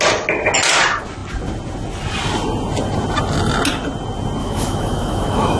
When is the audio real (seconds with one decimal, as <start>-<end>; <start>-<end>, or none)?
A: 0.0-4.4

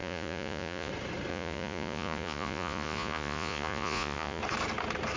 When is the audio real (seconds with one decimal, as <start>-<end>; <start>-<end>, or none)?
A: 0.9-1.3; 4.4-5.2

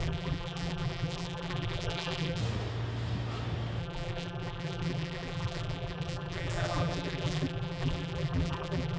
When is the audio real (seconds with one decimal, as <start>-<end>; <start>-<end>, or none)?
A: 2.4-3.8

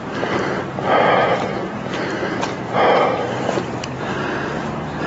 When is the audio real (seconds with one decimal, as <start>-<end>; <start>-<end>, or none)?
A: none

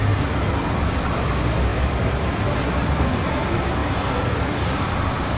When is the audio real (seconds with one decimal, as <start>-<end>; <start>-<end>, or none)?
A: 0.0-5.4

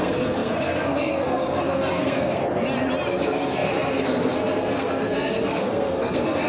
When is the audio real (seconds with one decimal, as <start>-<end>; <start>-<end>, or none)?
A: 2.4-3.1

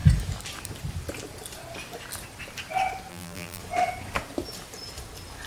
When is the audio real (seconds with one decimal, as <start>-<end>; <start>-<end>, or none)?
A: 0.0-3.1; 3.6-5.5